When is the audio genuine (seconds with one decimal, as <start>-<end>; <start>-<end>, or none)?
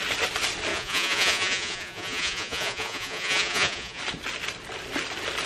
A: 0.0-0.7; 4.0-5.5